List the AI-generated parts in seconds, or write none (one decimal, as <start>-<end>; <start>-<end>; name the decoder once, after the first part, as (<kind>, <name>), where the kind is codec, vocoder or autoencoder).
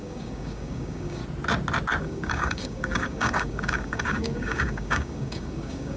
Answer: 0.0-1.2 (codec, DAC); 2.0-6.0